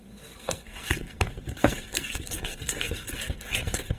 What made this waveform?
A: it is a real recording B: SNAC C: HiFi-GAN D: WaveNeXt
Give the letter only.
B